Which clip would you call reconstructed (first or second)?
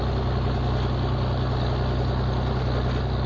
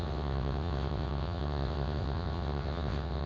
second